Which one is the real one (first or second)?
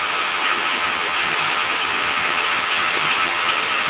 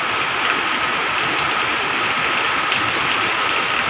second